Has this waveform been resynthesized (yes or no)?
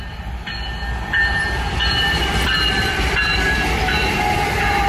yes